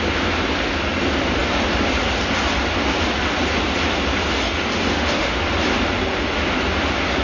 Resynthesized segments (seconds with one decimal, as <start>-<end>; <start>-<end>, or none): 4.9-5.4